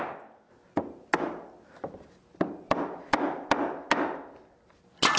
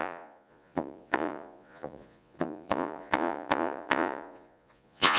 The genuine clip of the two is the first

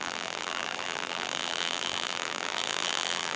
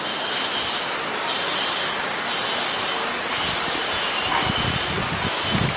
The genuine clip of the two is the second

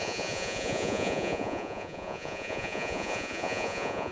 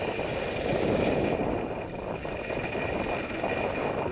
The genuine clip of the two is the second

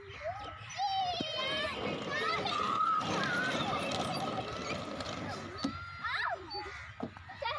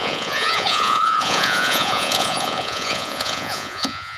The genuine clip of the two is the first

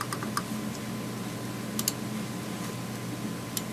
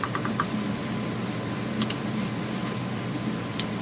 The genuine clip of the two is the first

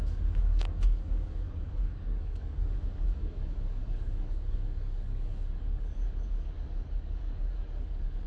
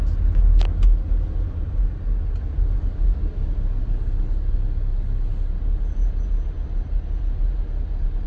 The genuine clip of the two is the second